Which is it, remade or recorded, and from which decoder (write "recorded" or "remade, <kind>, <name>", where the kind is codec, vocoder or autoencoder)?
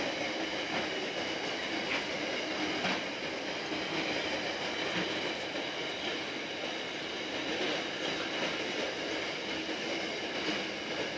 recorded